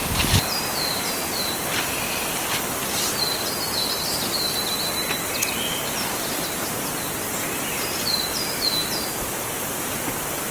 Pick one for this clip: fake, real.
real